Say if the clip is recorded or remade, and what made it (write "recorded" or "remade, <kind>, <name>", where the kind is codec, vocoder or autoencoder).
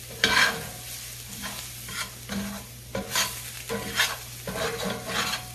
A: recorded